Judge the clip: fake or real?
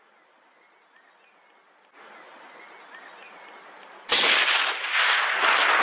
real